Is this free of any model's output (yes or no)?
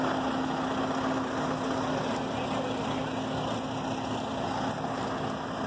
yes